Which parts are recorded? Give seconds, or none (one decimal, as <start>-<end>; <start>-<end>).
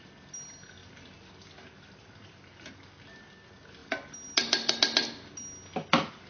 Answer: 0.0-6.3